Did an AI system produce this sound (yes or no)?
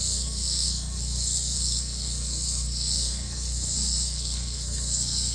yes